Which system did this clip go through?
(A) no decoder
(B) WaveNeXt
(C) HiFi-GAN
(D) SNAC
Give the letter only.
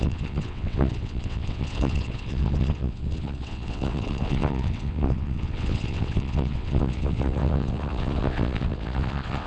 B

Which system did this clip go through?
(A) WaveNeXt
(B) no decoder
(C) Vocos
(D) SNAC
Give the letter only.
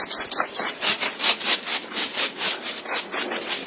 B